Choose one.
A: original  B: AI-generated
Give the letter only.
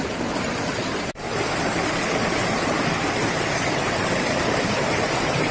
A